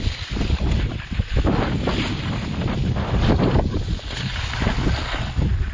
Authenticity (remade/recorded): recorded